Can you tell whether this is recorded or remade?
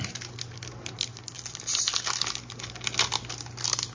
recorded